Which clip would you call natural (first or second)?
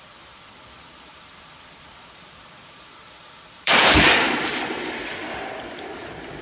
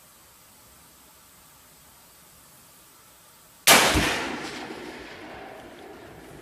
second